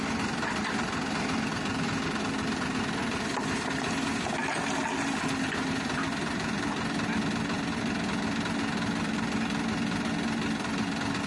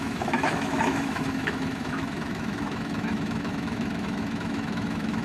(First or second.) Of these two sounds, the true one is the first